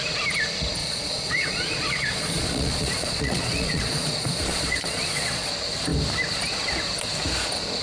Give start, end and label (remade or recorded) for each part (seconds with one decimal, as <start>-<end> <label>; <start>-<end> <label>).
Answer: 0.0-0.8 recorded; 0.8-5.5 remade; 5.5-7.8 recorded

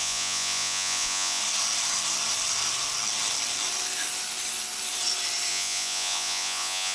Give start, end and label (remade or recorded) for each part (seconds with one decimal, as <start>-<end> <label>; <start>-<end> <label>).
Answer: 0.0-1.4 remade; 1.4-5.5 recorded; 5.5-6.9 remade

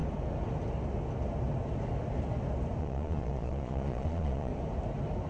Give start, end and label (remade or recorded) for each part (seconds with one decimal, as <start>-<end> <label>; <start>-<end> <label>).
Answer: 0.0-2.8 recorded; 2.8-4.5 remade; 4.5-5.3 recorded

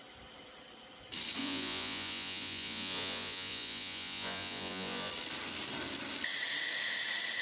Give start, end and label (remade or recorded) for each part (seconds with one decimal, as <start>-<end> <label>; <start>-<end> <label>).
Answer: 0.0-1.4 recorded; 1.4-5.1 remade; 5.1-7.4 recorded